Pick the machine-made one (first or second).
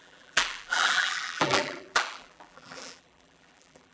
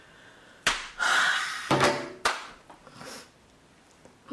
first